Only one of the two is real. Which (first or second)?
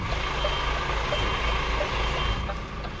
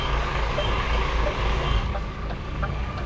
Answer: first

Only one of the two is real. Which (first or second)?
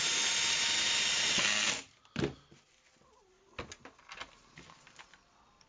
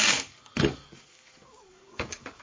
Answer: first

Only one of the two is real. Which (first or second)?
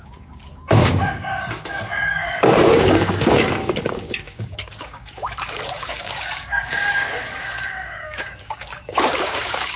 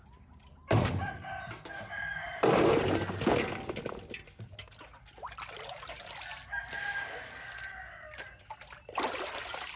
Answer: second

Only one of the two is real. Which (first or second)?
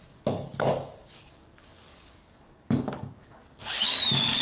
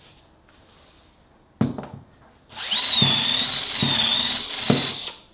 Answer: second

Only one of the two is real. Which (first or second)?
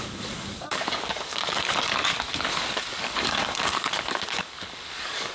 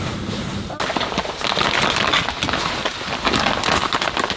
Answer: second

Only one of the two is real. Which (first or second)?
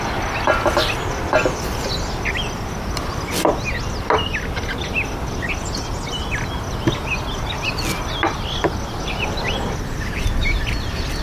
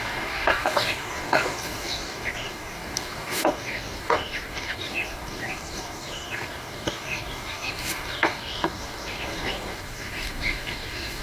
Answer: first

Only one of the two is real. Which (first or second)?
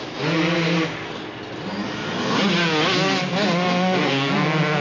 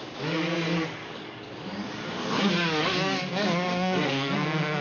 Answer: first